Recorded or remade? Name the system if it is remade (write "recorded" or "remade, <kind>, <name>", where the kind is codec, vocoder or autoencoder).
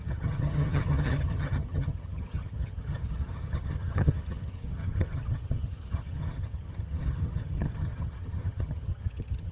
remade, vocoder, HiFi-GAN